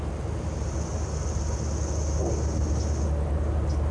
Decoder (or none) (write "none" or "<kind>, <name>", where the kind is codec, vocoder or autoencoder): none